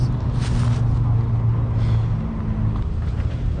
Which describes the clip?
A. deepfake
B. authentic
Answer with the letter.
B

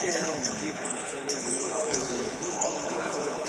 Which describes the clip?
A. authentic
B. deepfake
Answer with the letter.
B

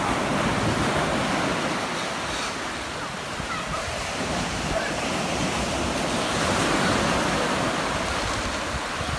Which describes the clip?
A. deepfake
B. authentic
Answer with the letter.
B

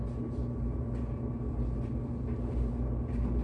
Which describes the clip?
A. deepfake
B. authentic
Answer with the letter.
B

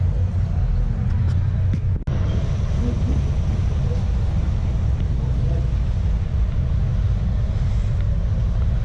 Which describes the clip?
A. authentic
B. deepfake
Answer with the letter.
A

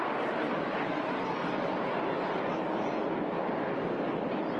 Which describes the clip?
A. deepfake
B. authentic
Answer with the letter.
B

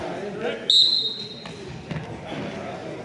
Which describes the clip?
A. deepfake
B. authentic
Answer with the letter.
B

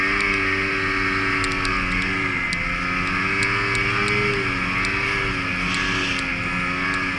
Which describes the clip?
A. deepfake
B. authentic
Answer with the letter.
B